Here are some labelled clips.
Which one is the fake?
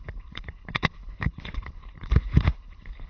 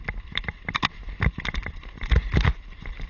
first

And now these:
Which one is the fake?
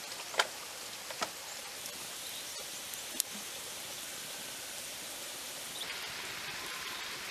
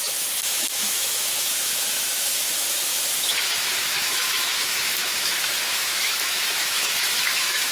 second